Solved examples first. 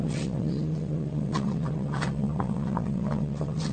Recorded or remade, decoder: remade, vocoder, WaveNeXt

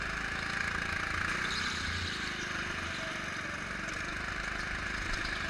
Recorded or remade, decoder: recorded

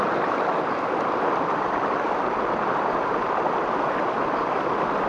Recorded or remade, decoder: recorded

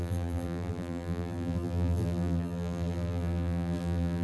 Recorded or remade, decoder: remade, vocoder, BigVGAN v2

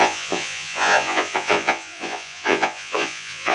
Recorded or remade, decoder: remade, vocoder, Vocos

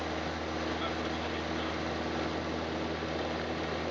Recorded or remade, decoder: recorded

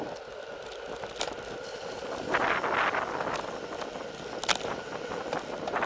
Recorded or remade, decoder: recorded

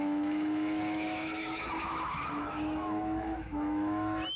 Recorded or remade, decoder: remade, autoencoder, DAC-VAE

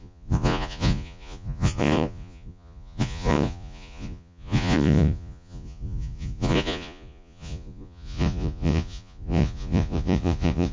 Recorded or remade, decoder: remade, vocoder, Vocos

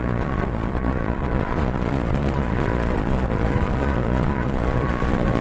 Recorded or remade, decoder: remade, vocoder, Vocos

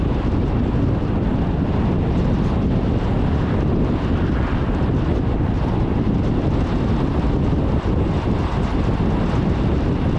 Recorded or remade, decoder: recorded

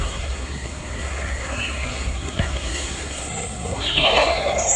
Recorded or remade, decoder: remade, codec, SNAC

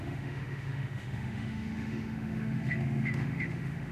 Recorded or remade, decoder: remade, autoencoder, DAC-VAE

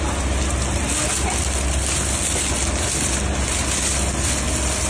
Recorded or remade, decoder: recorded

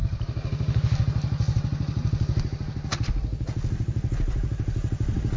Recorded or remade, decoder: recorded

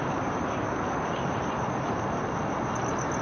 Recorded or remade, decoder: recorded